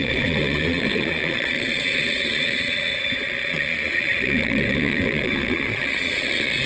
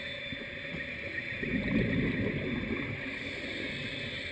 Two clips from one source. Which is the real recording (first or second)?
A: second